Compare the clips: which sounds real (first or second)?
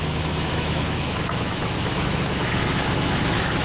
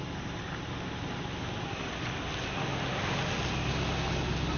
second